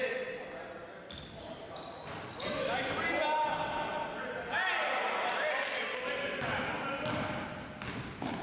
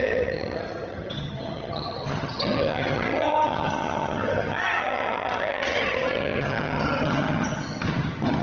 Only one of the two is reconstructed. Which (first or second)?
second